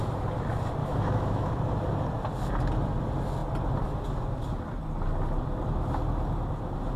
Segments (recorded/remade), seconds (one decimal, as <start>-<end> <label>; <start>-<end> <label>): 0.0-0.8 recorded; 0.8-1.5 remade; 1.5-7.0 recorded